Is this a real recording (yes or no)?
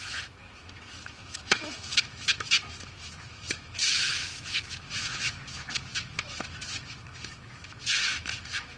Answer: no